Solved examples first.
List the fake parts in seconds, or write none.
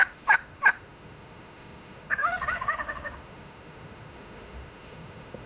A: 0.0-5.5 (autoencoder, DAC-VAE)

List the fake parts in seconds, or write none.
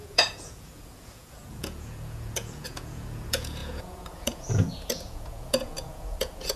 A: 0.0-6.6 (vocoder, Vocos)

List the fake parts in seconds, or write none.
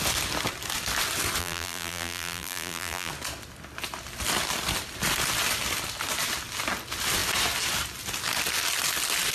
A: 1.4-3.1 (vocoder, BigVGAN v2)